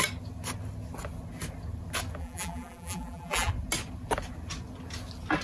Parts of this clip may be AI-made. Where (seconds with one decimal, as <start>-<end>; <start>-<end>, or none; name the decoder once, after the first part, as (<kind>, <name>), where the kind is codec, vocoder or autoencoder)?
2.2-3.5 (vocoder, BigVGAN v2)